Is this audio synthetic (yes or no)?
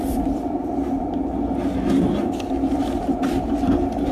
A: no